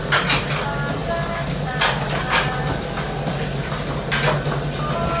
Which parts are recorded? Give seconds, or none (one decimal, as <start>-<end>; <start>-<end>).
0.0-5.2